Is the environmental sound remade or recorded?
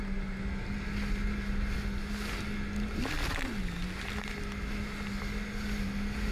recorded